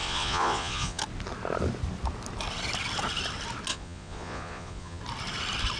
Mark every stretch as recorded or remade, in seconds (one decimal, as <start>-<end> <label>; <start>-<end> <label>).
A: 0.0-1.0 remade; 1.0-3.7 recorded; 3.7-5.0 remade; 5.0-5.8 recorded